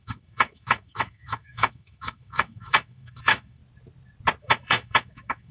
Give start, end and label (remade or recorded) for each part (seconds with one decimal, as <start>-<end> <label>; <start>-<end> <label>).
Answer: 0.0-3.6 remade; 3.6-4.4 recorded; 4.4-5.5 remade